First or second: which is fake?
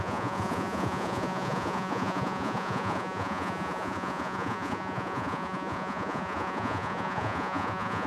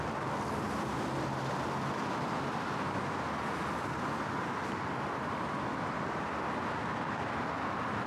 first